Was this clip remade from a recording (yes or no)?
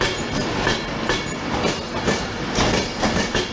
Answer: no